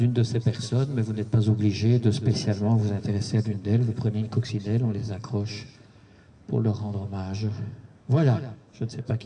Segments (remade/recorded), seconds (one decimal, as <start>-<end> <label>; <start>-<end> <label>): 0.0-2.8 recorded; 2.8-4.5 remade; 4.5-5.0 recorded; 5.0-9.3 remade